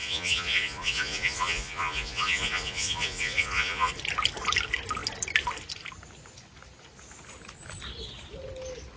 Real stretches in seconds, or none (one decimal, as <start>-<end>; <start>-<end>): 3.9-9.0